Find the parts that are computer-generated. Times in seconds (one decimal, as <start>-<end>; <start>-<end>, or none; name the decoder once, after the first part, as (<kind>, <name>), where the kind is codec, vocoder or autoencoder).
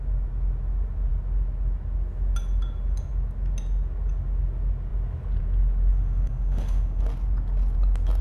5.9-7.0 (autoencoder, DAC-VAE)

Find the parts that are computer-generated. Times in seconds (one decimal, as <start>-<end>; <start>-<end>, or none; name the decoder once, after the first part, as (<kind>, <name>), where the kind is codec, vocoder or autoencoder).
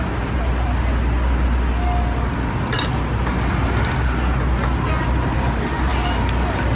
none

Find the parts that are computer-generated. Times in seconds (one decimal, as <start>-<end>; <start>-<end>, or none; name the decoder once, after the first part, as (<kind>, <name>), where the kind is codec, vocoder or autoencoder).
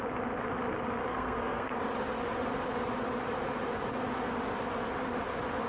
1.1-1.8 (codec, SNAC)